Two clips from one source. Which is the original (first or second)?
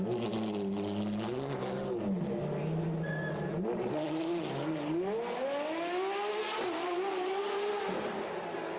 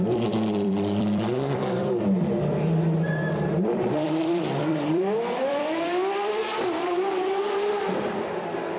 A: first